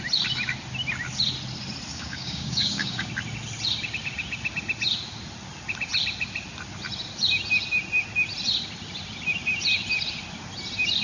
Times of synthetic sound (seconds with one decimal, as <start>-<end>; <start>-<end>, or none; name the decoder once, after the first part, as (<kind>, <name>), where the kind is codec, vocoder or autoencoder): 1.9-3.1 (codec, DAC)